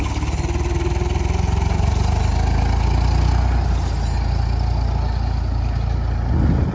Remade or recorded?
recorded